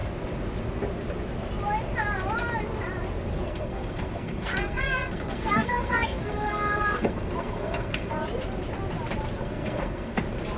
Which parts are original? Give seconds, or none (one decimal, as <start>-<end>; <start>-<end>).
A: 0.0-3.3; 8.1-9.4; 10.2-10.6